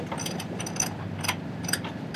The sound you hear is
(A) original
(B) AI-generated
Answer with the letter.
A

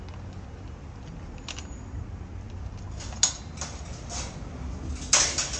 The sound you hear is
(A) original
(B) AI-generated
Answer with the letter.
A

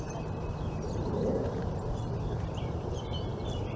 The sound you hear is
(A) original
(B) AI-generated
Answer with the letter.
B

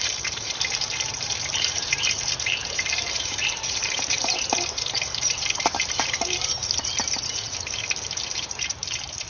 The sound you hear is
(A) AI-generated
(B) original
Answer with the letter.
A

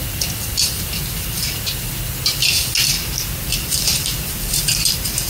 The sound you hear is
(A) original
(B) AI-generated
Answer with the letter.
A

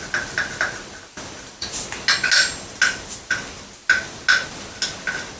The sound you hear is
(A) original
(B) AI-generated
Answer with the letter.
A